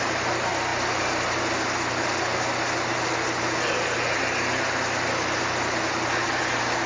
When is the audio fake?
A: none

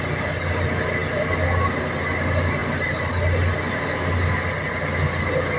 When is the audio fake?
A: none

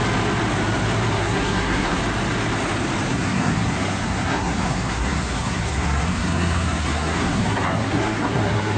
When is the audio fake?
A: 1.1-2.0 (codec, SNAC); 3.1-8.8

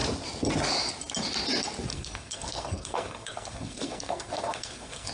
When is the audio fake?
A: 1.9-5.1 (codec, SNAC)

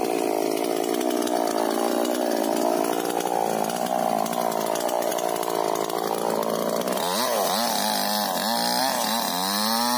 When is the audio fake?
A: none

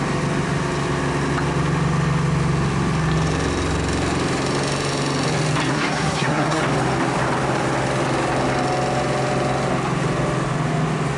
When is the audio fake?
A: 5.7-6.6 (codec, SNAC)

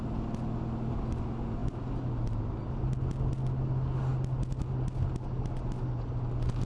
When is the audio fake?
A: none

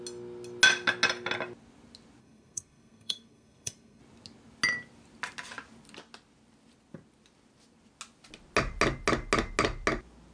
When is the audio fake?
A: 2.2-4.0 (codec, SNAC)